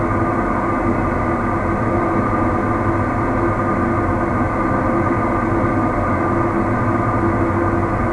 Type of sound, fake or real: real